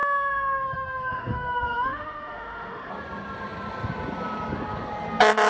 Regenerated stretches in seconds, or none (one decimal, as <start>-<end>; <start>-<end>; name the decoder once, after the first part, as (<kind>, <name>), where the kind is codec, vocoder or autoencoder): 0.0-2.9 (autoencoder, DAC-VAE)